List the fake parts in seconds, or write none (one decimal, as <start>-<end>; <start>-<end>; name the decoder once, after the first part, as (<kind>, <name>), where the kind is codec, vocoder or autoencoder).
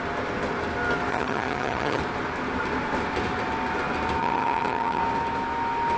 1.1-2.0 (vocoder, HiFi-GAN); 4.2-5.0